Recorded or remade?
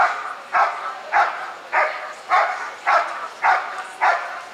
recorded